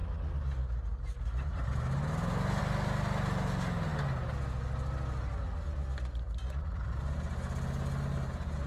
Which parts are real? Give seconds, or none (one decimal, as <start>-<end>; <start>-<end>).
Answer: 0.0-8.7